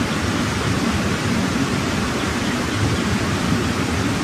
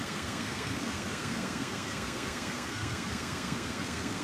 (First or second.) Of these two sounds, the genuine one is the first